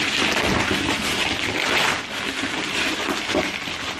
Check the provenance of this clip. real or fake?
real